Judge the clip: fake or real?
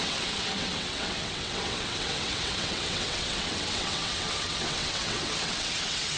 fake